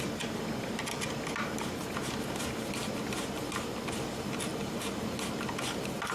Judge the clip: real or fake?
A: real